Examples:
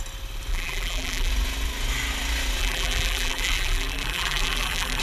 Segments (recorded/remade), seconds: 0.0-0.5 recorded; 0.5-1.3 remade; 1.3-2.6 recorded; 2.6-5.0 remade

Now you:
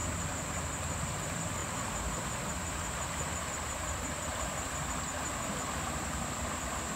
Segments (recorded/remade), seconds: 0.0-1.1 recorded; 1.1-7.0 remade